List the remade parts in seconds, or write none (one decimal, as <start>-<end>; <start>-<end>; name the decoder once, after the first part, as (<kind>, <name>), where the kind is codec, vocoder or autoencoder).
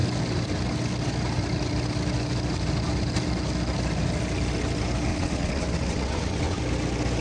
5.1-6.6 (vocoder, WaveNeXt)